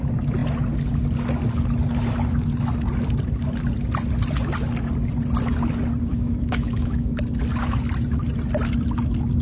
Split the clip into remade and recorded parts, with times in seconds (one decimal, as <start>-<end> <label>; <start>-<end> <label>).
0.0-6.1 recorded; 6.1-7.2 remade; 7.2-9.4 recorded